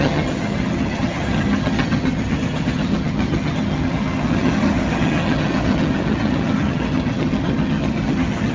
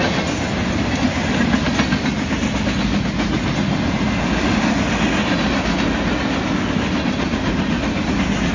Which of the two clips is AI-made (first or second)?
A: first